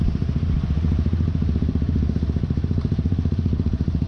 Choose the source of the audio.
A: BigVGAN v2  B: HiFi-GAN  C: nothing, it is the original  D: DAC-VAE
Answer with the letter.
C